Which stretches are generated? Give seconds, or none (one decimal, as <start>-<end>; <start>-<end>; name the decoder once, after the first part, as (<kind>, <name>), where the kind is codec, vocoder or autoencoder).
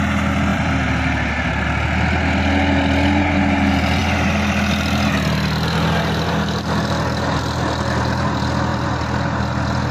0.5-1.5 (vocoder, BigVGAN v2); 8.7-9.4